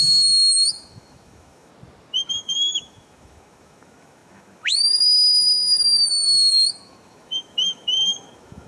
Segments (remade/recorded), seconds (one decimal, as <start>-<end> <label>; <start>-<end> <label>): 0.0-1.7 remade; 1.7-2.3 recorded; 2.3-8.7 remade